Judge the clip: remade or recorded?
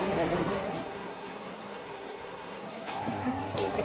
remade